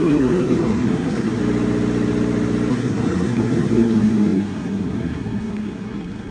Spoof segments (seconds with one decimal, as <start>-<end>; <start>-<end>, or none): 0.0-1.4; 2.7-6.3